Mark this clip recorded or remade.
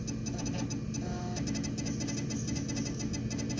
recorded